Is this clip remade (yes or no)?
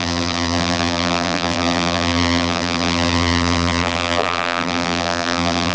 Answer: yes